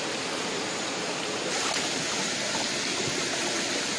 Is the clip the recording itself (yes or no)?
yes